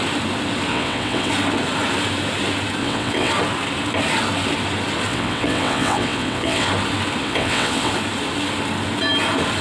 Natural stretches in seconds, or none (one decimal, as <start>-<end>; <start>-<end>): 0.0-0.7; 1.3-2.8; 3.3-5.1; 6.7-7.2; 7.9-9.6